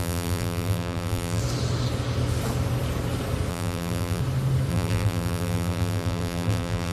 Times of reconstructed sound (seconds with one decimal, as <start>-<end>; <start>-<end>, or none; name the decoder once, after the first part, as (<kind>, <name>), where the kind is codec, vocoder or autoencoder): 0.0-1.4 (vocoder, BigVGAN v2); 3.5-4.2; 4.7-6.9